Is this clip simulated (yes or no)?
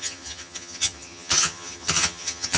yes